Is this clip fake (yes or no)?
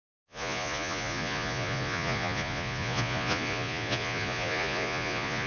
yes